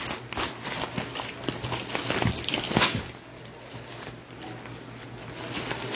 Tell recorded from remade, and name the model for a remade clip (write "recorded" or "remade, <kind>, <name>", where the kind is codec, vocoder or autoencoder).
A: recorded